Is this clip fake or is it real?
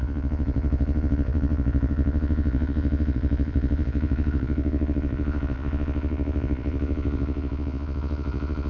fake